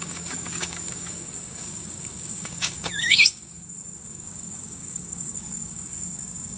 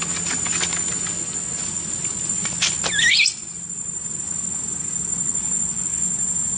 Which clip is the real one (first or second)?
second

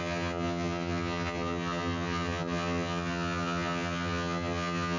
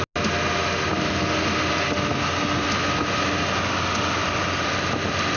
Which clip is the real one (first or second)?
second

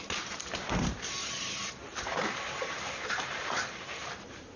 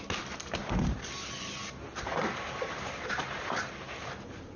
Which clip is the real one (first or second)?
second